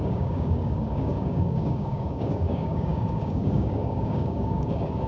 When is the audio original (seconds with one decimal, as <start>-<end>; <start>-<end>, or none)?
none